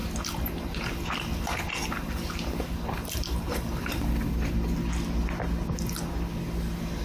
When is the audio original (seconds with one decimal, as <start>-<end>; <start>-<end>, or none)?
0.0-7.0